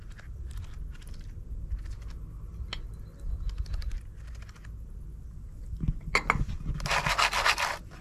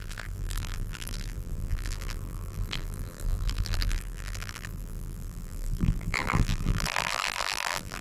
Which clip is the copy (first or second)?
second